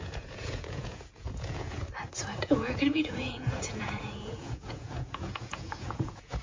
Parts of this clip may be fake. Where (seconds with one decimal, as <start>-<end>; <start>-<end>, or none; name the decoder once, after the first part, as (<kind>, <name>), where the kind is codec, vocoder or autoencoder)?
0.0-1.8 (vocoder, Vocos); 2.4-6.4